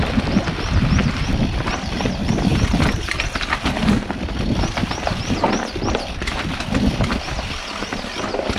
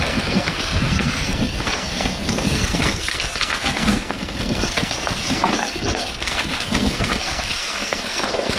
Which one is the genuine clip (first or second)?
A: first